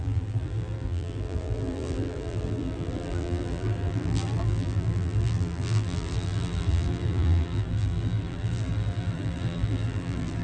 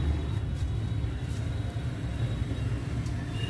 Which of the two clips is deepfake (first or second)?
first